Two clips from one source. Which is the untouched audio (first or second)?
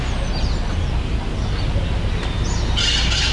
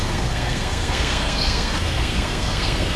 first